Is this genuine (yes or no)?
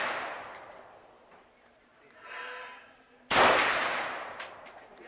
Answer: no